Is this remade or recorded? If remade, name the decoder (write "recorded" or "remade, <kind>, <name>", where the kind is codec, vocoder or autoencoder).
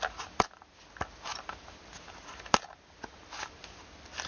recorded